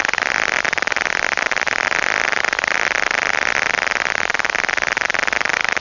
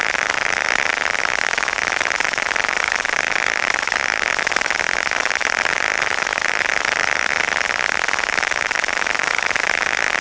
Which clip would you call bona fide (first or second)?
first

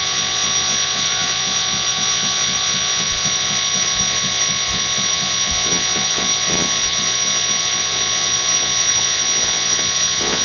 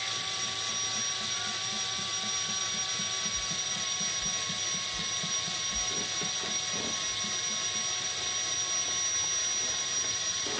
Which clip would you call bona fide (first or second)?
second